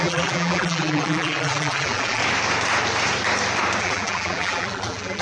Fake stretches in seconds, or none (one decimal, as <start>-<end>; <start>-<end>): 0.0-2.2; 3.8-5.2